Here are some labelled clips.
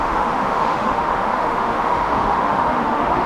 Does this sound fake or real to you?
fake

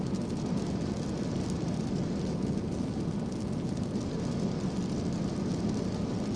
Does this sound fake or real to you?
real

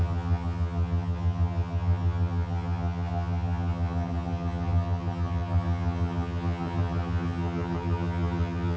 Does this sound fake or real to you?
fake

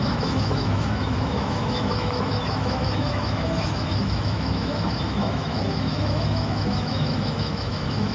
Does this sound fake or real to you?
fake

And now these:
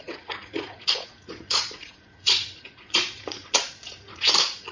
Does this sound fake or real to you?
fake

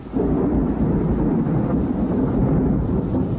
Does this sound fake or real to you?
real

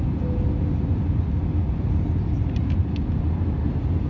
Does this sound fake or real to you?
real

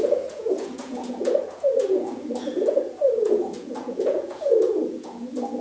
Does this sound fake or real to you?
fake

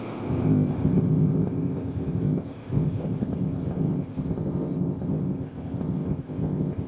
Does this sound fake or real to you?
fake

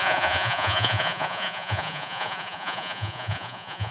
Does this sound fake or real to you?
fake